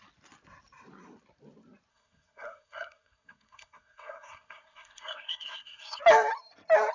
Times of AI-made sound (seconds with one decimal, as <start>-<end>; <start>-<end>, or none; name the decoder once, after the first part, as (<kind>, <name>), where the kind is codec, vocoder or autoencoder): 1.9-6.0 (codec, SNAC)